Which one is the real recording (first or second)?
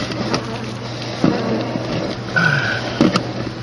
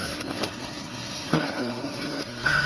first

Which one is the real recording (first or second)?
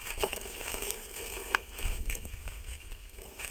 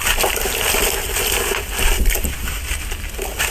second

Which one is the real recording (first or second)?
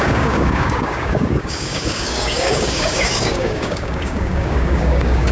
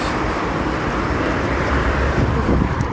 second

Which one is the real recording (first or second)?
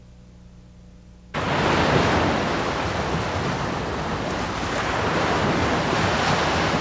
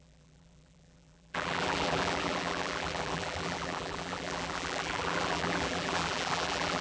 first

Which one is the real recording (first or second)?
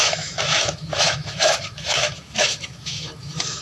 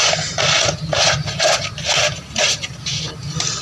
second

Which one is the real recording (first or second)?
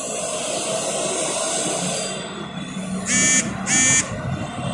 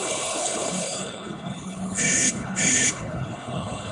first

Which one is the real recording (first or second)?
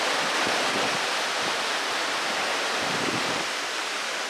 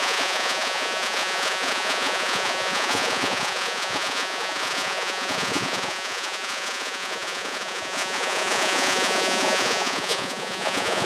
first